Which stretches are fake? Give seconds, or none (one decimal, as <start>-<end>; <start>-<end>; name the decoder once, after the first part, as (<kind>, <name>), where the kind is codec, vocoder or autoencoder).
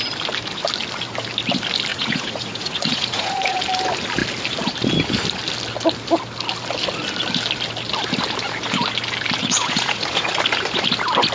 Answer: 1.9-3.6 (vocoder, Vocos); 9.4-10.3